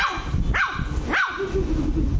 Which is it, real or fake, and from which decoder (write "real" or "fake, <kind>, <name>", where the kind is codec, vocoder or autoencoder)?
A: real